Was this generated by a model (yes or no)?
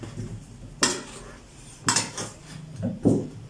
no